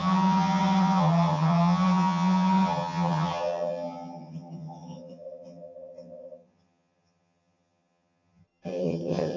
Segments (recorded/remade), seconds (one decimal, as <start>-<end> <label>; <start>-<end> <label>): 0.0-9.4 remade